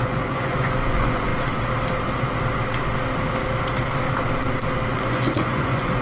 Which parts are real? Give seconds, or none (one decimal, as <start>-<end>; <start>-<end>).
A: 1.3-4.9